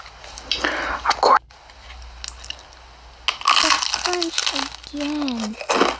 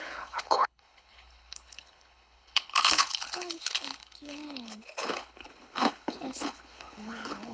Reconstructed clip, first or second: second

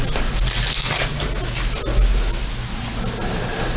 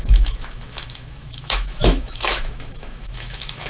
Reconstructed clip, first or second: second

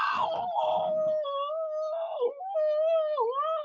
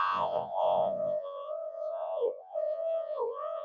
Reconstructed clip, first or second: second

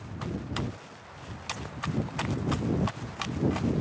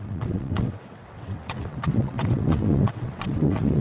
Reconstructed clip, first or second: second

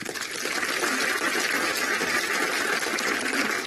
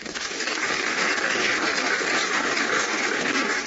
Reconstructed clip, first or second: second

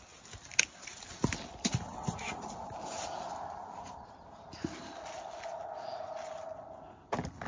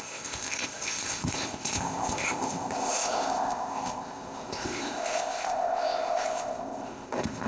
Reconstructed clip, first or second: second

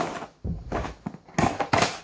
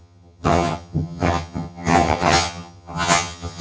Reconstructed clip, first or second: second